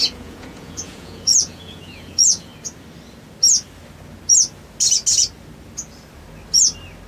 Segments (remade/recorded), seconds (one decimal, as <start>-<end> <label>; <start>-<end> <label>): 0.0-2.5 remade; 2.5-7.1 recorded